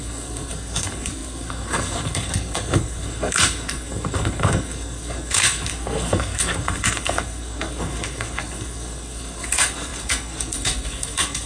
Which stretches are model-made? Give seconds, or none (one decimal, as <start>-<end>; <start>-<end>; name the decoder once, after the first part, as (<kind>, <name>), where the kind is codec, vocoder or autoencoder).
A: 0.0-11.5 (codec, SNAC)